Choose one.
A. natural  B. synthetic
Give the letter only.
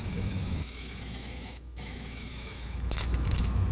B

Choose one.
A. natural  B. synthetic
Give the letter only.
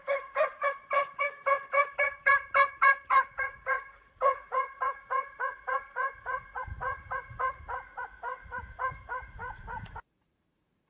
B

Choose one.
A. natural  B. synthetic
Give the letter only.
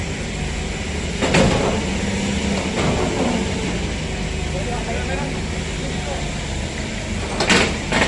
A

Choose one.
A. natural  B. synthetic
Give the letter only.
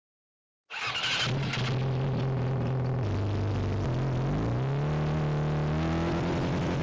A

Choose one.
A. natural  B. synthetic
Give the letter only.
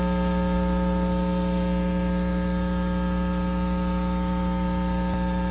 A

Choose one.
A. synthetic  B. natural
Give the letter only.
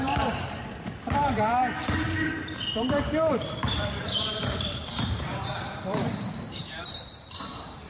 A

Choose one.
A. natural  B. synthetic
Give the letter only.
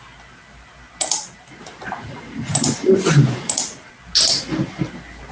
A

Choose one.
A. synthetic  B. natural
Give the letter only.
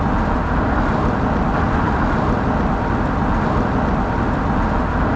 B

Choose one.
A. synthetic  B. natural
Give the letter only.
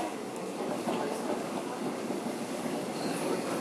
A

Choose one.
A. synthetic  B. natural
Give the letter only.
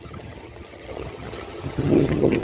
A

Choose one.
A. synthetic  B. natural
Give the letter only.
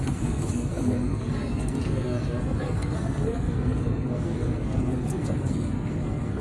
A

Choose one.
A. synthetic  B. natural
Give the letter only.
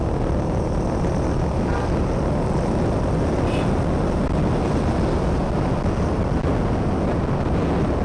B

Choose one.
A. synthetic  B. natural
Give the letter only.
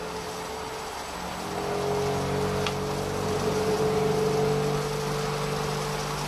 B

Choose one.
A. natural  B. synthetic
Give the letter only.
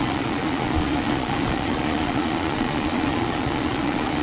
B